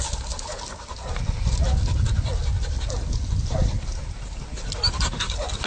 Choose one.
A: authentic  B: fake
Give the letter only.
A